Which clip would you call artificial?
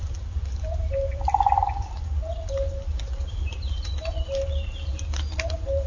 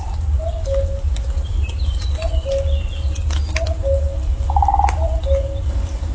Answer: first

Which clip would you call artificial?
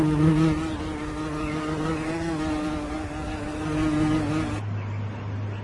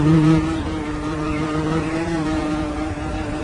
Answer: second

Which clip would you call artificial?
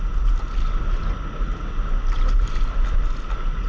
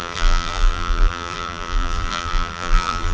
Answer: second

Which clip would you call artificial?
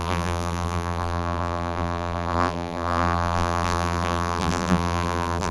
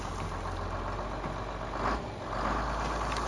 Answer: first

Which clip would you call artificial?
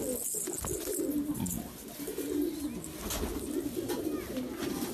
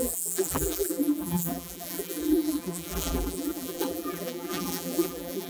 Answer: second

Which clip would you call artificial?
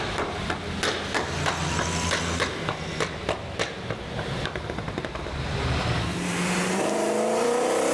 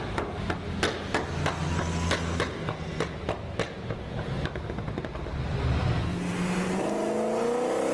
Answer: first